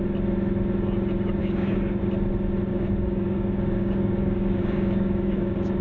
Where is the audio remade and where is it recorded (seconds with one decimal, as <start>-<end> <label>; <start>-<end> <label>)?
0.0-1.4 recorded; 1.4-2.0 remade; 2.0-2.7 recorded; 2.7-5.8 remade